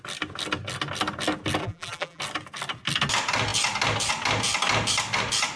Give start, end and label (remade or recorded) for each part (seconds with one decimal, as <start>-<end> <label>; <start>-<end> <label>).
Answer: 0.0-1.6 recorded; 1.6-2.2 remade; 2.2-5.6 recorded